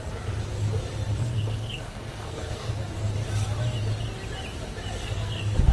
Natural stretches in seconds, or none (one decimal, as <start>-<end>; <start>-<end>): 0.0-1.1; 2.7-5.0